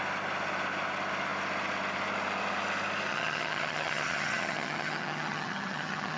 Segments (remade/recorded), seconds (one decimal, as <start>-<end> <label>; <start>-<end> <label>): 0.0-3.1 recorded; 3.1-6.2 remade